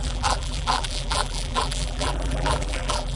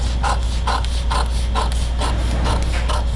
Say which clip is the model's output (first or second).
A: first